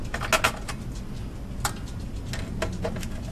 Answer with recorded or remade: recorded